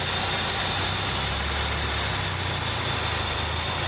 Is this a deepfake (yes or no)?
no